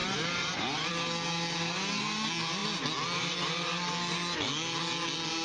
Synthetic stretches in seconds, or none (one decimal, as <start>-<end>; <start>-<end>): 0.0-0.9